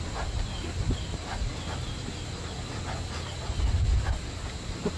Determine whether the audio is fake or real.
real